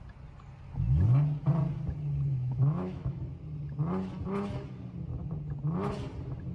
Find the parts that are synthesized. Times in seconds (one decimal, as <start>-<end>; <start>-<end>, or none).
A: 2.3-3.2